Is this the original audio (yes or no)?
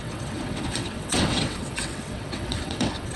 no